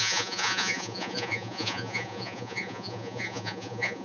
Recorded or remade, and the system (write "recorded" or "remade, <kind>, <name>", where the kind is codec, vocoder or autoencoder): remade, vocoder, Vocos